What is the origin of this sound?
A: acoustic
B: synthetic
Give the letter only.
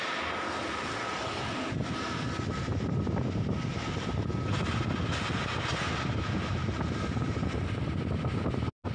A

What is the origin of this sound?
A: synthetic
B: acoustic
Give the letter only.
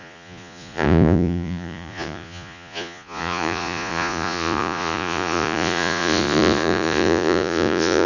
A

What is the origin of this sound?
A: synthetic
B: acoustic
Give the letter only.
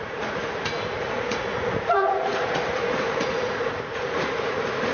A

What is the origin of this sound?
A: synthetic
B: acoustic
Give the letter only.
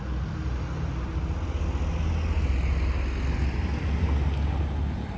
B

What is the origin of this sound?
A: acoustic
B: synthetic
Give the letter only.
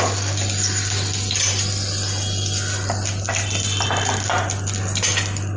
A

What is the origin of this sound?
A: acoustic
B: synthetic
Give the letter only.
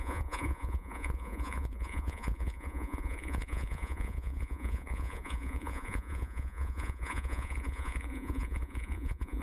B